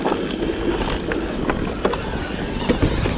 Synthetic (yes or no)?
no